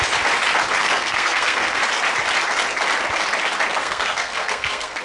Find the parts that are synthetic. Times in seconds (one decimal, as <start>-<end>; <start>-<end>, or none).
0.8-1.8; 3.8-5.0